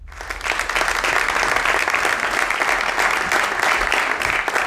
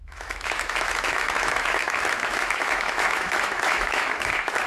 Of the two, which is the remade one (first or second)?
second